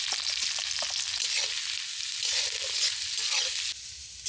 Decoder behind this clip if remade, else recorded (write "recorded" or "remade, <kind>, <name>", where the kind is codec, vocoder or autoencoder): recorded